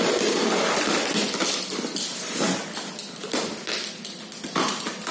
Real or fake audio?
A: real